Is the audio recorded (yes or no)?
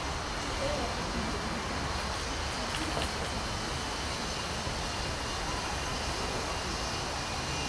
yes